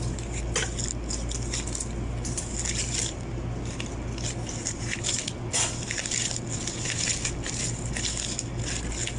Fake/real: real